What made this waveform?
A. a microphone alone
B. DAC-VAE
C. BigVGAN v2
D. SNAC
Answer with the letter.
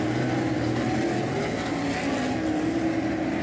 A